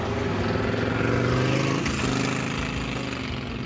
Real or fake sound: real